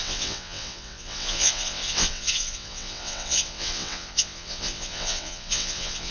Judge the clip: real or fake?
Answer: fake